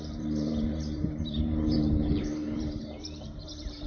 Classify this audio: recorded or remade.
remade